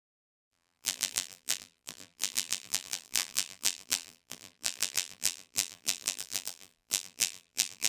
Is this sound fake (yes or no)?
yes